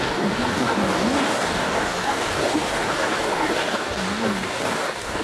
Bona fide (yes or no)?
no